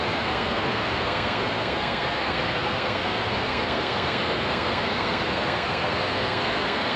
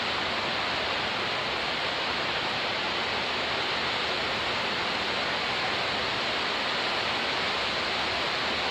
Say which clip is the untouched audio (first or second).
second